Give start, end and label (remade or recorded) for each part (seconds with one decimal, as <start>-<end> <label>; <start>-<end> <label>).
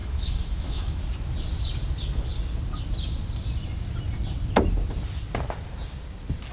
0.0-1.0 remade; 1.0-6.5 recorded